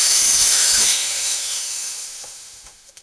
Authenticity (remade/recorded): remade